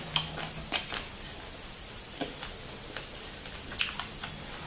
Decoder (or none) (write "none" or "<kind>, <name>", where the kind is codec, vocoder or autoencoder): none